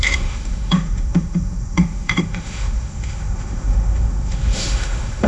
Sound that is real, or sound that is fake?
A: fake